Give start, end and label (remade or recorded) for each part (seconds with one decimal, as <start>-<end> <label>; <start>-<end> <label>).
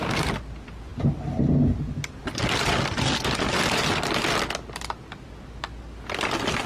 0.0-6.7 recorded